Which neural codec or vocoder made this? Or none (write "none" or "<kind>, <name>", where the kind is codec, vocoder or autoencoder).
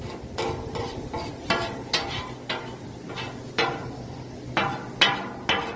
none